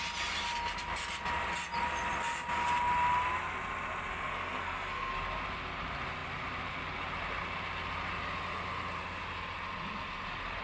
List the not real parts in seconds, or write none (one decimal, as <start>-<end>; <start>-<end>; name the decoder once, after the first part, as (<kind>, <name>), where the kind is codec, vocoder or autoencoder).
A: 4.1-5.1 (codec, SNAC)